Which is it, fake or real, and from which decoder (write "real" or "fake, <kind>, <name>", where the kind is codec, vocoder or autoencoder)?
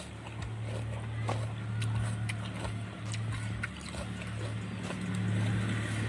real